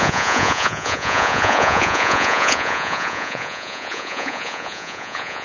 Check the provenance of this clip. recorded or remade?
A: remade